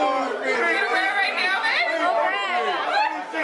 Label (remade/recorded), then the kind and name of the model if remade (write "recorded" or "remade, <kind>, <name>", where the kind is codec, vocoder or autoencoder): recorded